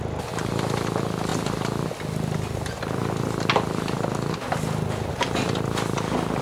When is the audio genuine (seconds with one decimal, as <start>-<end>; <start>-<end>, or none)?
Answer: 0.0-6.4